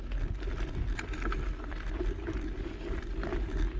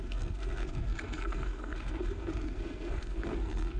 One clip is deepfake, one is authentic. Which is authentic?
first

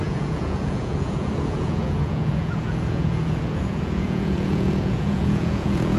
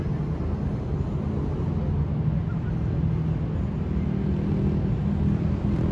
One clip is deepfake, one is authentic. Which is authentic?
second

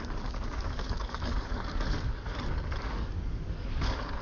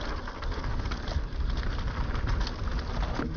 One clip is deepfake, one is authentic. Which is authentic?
second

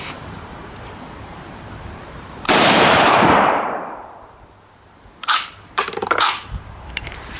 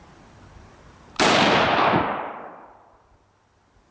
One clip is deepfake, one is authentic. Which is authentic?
second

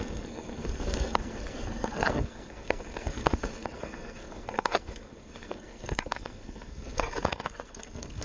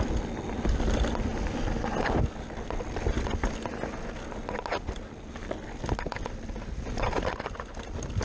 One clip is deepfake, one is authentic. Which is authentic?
second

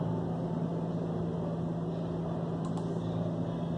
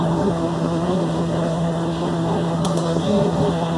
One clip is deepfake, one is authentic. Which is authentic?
first